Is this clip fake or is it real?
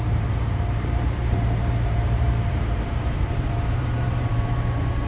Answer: fake